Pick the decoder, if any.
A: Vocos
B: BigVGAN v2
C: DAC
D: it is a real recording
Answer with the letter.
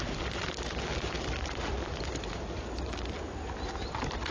D